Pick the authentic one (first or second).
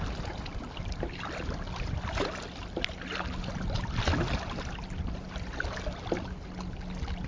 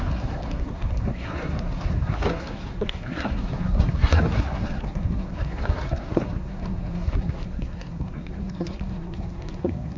first